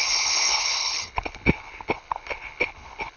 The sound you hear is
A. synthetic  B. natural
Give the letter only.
A